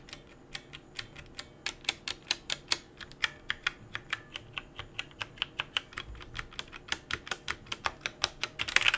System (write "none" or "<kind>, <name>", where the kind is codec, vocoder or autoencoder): none